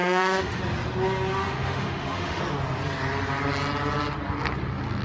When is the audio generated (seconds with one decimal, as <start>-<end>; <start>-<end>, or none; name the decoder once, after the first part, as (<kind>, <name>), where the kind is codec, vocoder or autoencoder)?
0.0-0.6 (autoencoder, DAC-VAE); 1.4-2.4